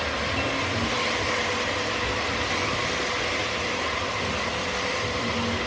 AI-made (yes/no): no